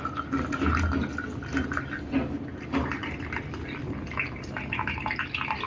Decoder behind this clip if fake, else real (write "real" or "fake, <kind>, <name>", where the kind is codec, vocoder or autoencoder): real